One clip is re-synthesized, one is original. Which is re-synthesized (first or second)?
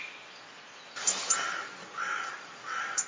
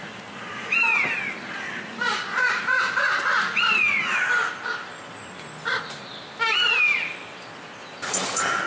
second